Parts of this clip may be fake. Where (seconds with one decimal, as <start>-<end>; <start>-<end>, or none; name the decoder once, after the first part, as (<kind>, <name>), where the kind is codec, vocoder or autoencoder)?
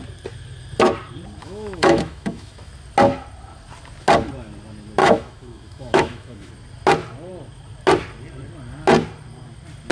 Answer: 1.4-2.7 (autoencoder, DAC-VAE); 5.0-6.5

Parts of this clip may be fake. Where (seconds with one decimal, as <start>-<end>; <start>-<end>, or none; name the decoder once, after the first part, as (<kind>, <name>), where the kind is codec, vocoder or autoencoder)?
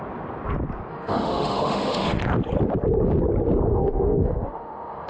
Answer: 0.9-2.2 (autoencoder, DAC-VAE); 3.7-5.1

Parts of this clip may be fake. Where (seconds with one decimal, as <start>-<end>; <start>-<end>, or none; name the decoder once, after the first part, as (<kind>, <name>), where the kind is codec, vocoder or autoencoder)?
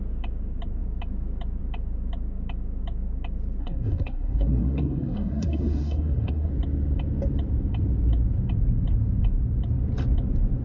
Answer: 3.6-6.5 (codec, SNAC)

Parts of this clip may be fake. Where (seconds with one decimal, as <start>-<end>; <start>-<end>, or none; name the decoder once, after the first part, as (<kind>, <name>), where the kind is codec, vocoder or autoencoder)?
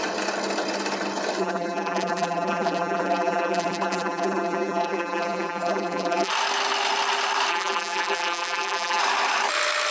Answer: 1.4-6.3 (vocoder, BigVGAN v2); 7.5-9.0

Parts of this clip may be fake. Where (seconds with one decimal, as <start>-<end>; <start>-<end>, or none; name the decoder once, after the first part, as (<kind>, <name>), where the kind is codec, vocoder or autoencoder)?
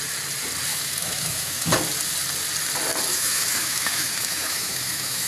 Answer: 0.7-1.7 (autoencoder, DAC-VAE); 3.1-5.3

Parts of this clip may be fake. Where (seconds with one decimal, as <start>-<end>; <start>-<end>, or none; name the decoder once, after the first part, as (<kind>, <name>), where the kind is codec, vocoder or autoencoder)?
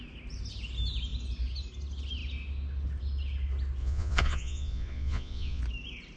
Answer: 3.8-5.6 (vocoder, Vocos)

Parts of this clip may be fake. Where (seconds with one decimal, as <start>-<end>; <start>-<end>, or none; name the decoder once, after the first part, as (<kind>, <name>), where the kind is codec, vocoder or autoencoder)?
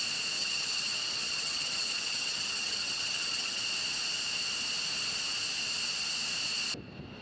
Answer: 0.4-3.6 (vocoder, HiFi-GAN)